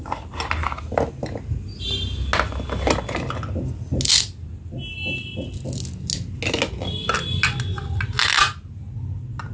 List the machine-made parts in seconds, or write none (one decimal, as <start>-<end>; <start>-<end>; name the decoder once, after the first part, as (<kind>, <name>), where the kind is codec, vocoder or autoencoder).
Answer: none